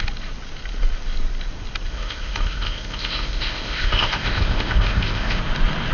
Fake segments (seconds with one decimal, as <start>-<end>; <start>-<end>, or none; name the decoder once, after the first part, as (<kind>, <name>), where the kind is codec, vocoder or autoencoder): 1.9-5.4 (codec, ZipCodec)